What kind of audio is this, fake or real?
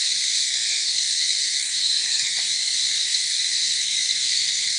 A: fake